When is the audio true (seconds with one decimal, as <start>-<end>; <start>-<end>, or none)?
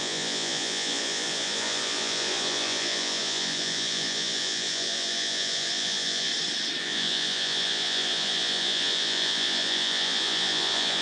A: 6.3-6.8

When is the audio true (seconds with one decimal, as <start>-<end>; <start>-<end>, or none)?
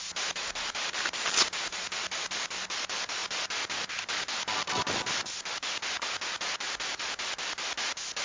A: 0.0-8.2